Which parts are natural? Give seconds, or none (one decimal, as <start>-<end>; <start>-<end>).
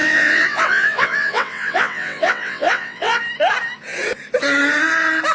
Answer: 3.2-5.3